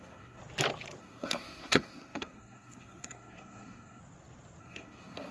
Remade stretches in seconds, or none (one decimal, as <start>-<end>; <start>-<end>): 0.0-0.4; 1.0-4.0; 4.6-5.3